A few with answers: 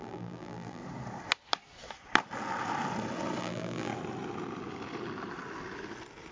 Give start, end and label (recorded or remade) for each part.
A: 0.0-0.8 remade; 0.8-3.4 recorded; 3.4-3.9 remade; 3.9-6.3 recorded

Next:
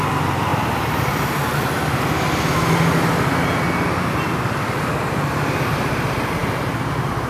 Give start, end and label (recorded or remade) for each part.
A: 0.0-1.5 remade; 1.5-5.7 recorded; 5.7-7.3 remade

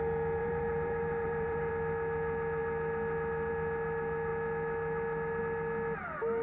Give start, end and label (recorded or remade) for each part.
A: 0.0-0.4 recorded; 0.4-1.7 remade; 1.7-6.4 recorded

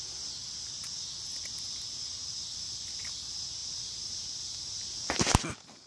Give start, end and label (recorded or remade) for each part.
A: 0.0-3.6 recorded; 3.6-4.3 remade; 4.3-5.9 recorded

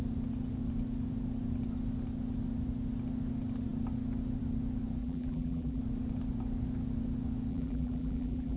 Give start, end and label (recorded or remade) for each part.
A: 0.0-5.0 recorded; 5.0-5.8 remade; 5.8-7.5 recorded; 7.5-8.6 remade

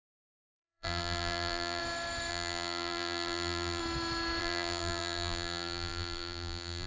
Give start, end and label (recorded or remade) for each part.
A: 0.0-1.8 remade; 1.8-2.3 recorded; 2.3-3.8 remade; 3.8-4.4 recorded; 4.4-6.9 remade

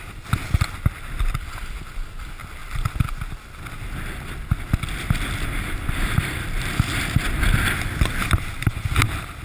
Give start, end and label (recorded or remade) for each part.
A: 0.0-9.4 recorded